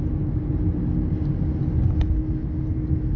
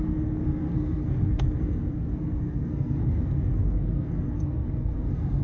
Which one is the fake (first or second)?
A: second